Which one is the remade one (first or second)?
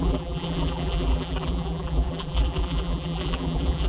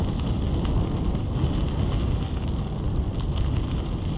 first